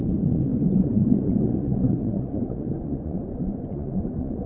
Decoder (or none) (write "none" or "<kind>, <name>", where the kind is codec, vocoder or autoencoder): vocoder, Vocos